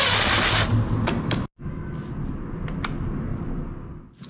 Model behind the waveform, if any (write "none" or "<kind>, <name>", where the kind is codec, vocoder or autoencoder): none